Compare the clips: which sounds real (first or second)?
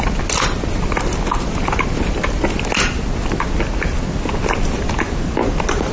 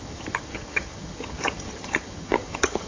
first